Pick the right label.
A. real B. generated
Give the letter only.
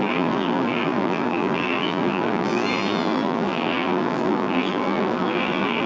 B